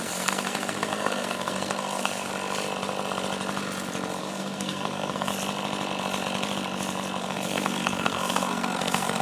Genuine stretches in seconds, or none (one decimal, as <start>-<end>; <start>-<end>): 2.3-4.2; 5.3-7.2